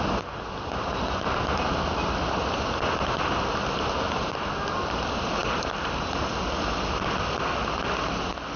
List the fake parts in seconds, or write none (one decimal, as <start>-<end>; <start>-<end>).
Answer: none